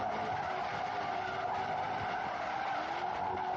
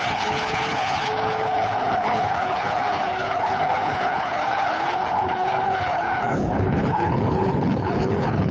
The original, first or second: first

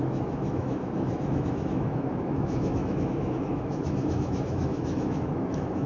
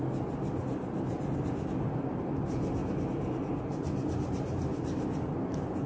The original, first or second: second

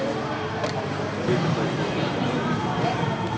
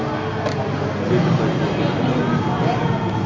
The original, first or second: second